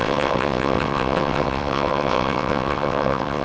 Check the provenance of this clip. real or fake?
fake